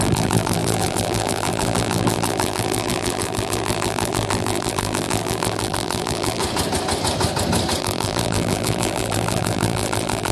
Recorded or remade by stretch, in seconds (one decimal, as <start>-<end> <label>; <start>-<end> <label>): 0.0-6.4 remade; 6.4-7.8 recorded; 7.8-10.3 remade